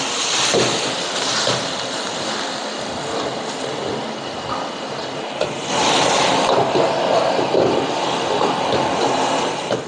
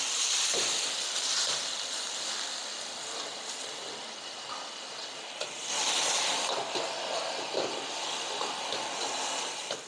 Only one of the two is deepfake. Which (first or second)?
second